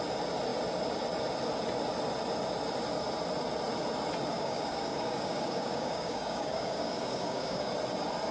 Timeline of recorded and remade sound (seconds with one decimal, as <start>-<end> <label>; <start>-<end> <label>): 0.0-4.3 recorded; 4.3-7.7 remade; 7.7-8.3 recorded